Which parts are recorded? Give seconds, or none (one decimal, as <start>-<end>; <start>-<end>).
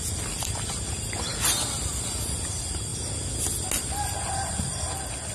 0.0-5.3